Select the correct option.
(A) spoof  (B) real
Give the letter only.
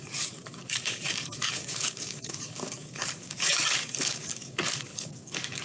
A